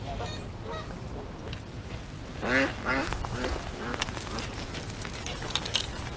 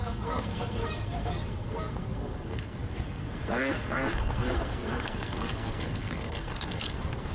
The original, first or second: first